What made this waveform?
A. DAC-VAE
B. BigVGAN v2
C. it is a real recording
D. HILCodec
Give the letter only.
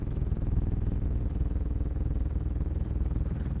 C